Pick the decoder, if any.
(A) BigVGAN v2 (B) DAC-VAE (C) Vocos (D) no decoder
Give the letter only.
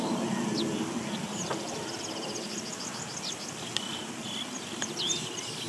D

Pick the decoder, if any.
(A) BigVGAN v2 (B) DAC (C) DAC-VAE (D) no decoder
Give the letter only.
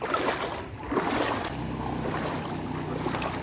D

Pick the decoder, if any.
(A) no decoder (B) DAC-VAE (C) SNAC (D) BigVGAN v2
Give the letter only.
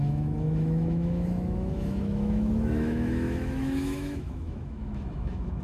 B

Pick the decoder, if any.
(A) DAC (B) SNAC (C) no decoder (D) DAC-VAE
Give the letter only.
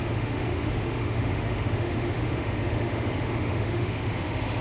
D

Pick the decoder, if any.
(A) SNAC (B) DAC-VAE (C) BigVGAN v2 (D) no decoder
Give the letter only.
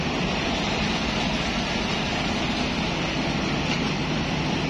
D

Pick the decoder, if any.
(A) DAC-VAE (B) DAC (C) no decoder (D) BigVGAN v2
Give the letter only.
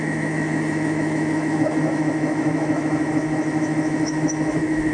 A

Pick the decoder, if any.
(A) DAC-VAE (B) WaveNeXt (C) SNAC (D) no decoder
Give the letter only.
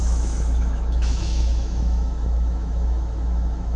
A